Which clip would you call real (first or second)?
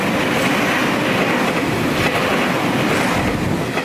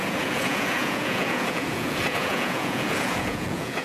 first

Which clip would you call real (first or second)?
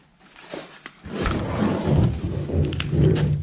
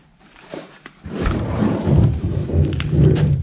first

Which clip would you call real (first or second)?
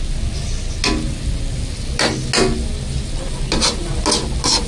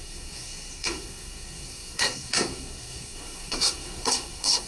first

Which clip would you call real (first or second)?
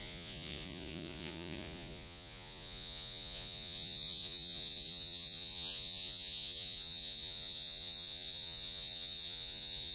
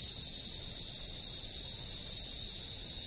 second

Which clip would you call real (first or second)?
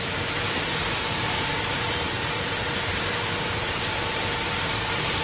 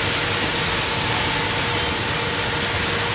second